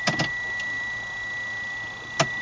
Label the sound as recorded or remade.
recorded